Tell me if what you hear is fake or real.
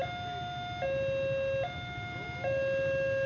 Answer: real